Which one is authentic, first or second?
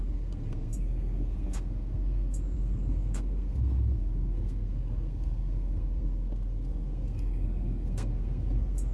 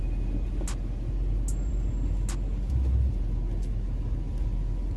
second